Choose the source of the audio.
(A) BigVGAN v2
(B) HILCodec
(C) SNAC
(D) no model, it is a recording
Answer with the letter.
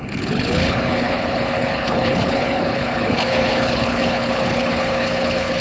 B